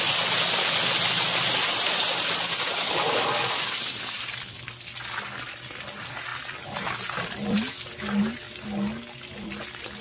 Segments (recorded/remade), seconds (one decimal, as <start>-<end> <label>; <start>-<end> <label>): 0.0-10.0 recorded